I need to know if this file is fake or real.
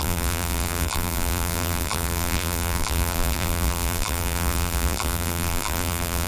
fake